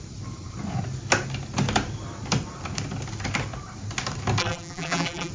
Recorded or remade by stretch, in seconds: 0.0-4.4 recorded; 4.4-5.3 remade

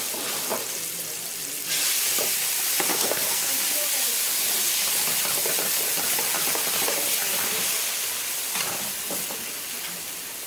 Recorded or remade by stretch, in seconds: 0.0-2.9 recorded; 2.9-3.5 remade; 3.5-10.5 recorded

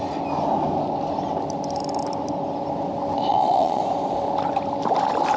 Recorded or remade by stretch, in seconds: 0.0-3.3 recorded; 3.3-3.8 remade; 3.8-5.4 recorded

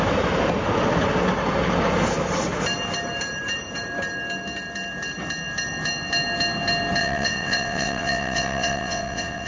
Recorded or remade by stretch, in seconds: 0.0-7.0 recorded; 7.0-9.5 remade

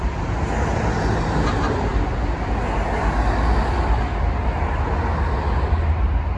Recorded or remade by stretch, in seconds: 0.0-6.4 recorded

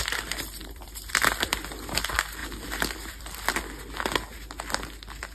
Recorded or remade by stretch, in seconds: 0.0-0.6 recorded; 0.6-1.6 remade; 1.6-2.4 recorded; 2.4-3.5 remade; 3.5-5.3 recorded

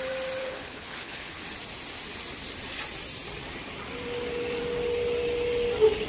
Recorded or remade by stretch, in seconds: 0.0-0.4 recorded; 0.4-1.4 remade; 1.4-6.1 recorded

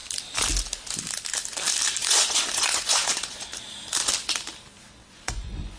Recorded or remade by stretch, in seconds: 0.0-2.0 recorded; 2.0-3.5 remade; 3.5-5.0 recorded; 5.0-5.8 remade